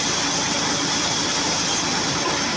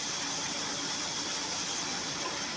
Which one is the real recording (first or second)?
first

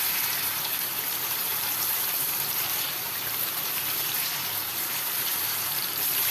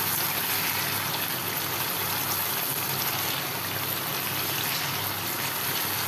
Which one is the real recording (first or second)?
second